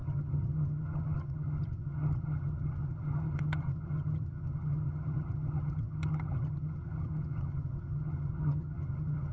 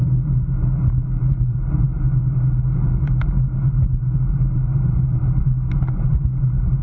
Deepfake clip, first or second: first